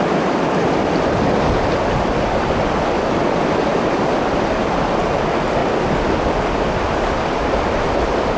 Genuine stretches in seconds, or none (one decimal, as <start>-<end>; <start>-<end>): 0.0-8.4